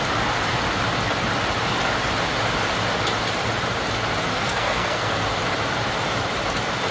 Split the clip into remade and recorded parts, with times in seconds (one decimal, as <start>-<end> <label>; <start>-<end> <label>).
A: 0.0-4.3 recorded; 4.3-5.2 remade; 5.2-6.9 recorded